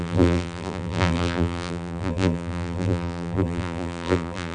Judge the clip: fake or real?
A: fake